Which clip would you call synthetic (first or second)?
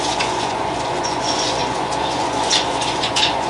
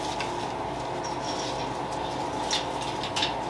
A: first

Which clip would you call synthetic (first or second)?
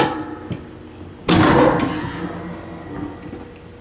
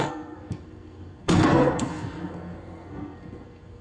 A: second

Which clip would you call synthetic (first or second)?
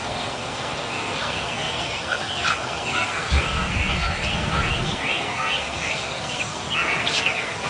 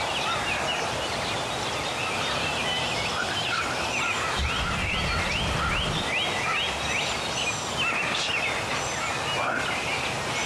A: first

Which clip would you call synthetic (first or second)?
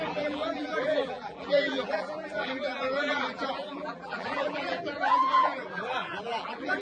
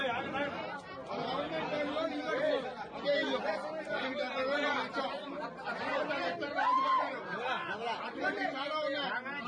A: first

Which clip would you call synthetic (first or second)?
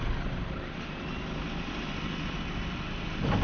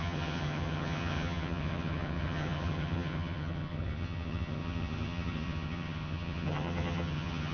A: second